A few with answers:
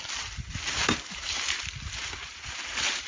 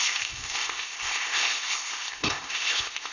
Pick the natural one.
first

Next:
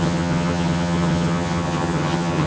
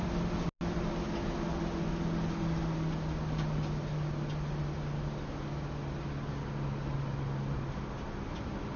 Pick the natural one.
second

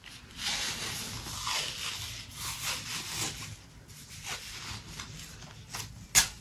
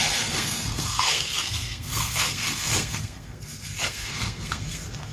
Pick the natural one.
first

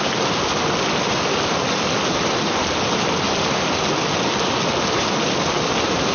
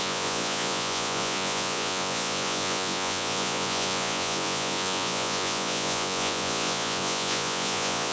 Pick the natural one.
first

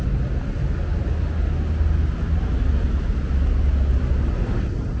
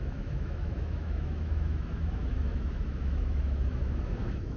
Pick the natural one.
first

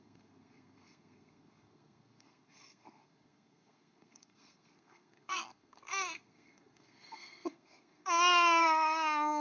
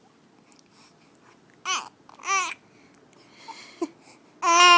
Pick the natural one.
second